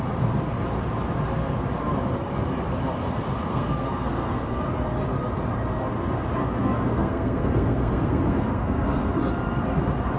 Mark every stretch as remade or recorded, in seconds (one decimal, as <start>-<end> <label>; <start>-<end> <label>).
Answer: 0.0-3.5 recorded; 3.5-4.6 remade; 4.6-6.4 recorded; 6.4-9.1 remade; 9.1-10.2 recorded